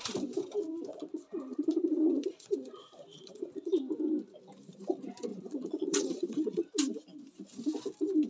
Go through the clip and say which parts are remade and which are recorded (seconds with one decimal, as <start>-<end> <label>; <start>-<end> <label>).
0.0-0.9 recorded; 0.9-3.8 remade; 3.8-5.3 recorded; 5.3-6.7 remade; 6.7-8.3 recorded